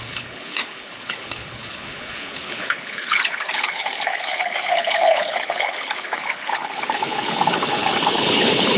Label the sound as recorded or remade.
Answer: remade